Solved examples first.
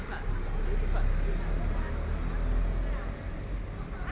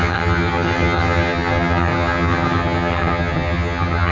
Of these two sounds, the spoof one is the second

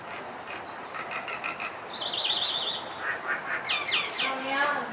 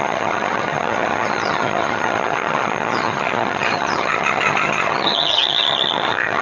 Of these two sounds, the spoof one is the second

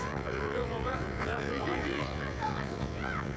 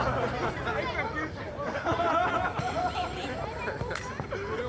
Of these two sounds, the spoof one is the first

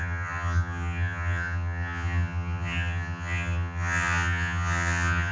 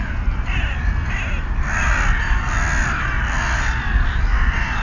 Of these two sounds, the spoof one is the first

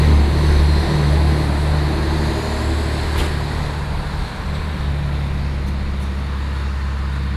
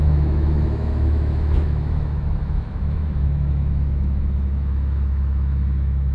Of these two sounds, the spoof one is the second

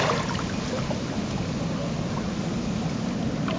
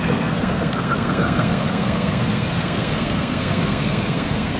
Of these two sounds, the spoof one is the second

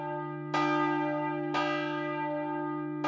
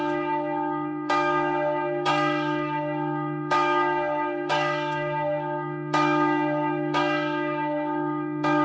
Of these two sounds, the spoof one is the second